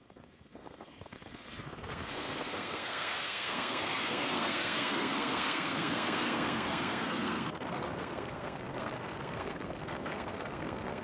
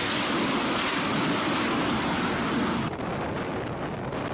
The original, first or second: second